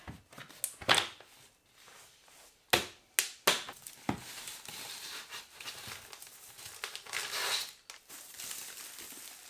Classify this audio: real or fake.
real